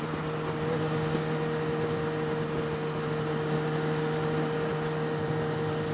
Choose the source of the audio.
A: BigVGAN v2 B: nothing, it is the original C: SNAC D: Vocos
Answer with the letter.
B